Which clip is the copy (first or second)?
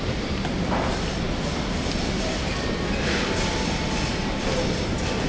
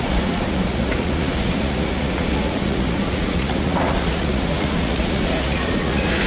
second